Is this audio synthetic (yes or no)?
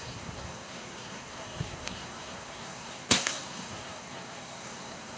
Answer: yes